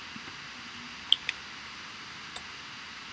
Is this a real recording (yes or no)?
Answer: yes